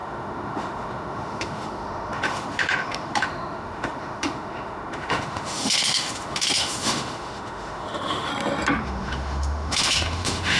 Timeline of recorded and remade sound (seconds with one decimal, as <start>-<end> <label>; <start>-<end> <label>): 0.0-8.3 remade; 8.3-8.8 recorded; 8.8-10.6 remade